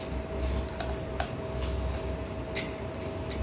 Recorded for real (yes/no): yes